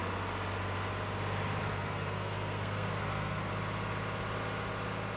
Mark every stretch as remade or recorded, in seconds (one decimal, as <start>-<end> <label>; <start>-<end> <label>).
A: 0.0-1.6 recorded; 1.6-3.5 remade; 3.5-5.2 recorded